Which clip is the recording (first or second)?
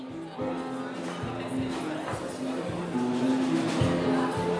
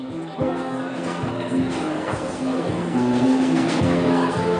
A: first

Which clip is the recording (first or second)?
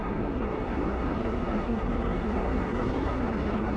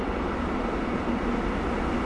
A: second